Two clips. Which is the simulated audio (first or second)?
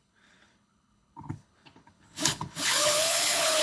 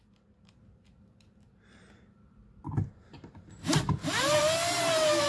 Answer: first